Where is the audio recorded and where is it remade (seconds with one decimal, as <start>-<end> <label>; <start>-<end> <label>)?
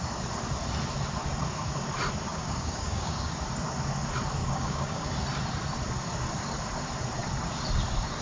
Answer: 0.0-2.3 recorded; 2.3-3.3 remade; 3.3-4.4 recorded; 4.4-5.1 remade; 5.1-8.2 recorded